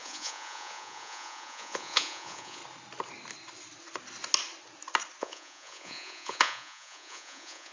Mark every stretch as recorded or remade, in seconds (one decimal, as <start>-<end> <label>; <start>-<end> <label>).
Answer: 0.0-2.6 remade; 2.6-5.2 recorded; 5.2-7.7 remade